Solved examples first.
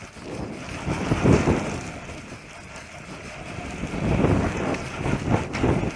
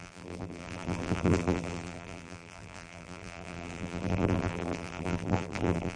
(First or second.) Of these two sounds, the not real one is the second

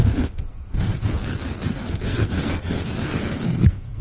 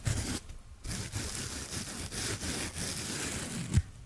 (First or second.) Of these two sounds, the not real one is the first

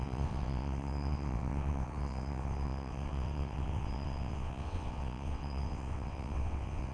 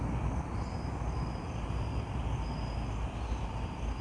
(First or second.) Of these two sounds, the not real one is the first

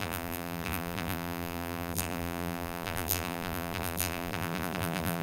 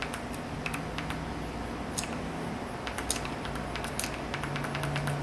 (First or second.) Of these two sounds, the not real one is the first